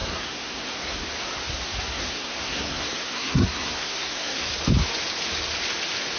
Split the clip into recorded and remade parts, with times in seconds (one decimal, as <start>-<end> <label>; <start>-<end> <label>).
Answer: 0.0-1.1 remade; 1.1-1.9 recorded; 1.9-4.5 remade; 4.5-6.2 recorded